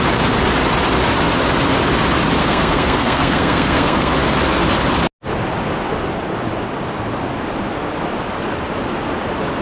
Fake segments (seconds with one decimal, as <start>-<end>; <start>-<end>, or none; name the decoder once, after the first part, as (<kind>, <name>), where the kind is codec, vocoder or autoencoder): 2.4-4.1 (codec, SNAC)